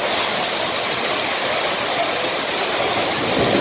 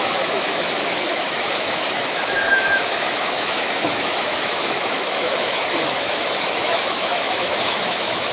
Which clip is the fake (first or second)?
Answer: second